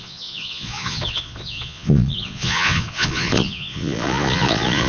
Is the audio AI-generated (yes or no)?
yes